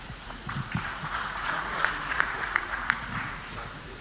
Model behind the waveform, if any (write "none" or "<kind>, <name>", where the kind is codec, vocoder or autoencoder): vocoder, Vocos